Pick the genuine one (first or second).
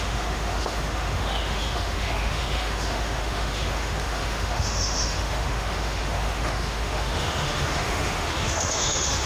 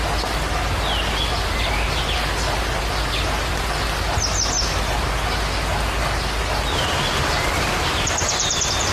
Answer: second